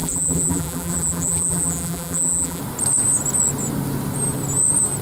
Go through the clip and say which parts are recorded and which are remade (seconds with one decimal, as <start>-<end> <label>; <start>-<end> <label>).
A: 0.0-2.6 remade; 2.6-5.0 recorded